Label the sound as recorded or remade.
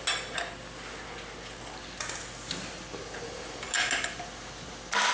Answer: recorded